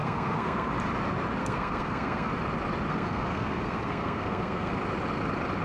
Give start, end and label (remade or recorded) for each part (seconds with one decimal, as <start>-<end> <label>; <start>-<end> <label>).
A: 0.0-0.7 remade; 0.7-1.4 recorded; 1.4-2.3 remade; 2.3-2.9 recorded; 2.9-4.7 remade; 4.7-5.6 recorded